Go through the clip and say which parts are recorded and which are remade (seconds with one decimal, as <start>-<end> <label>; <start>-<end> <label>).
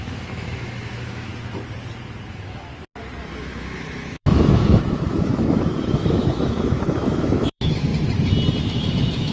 0.0-1.3 remade; 1.3-2.3 recorded; 2.3-2.7 remade; 2.7-3.4 recorded; 3.4-7.9 remade; 7.9-8.6 recorded; 8.6-9.3 remade